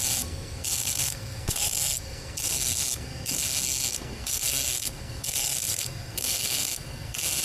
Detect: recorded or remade remade